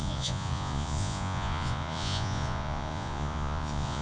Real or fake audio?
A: fake